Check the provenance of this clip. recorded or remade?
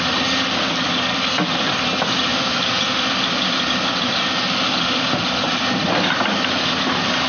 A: recorded